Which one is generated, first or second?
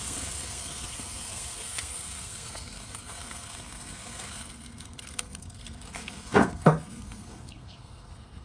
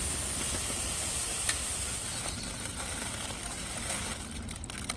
first